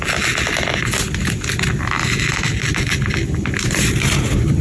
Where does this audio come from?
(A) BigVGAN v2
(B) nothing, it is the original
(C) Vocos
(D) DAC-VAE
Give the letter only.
B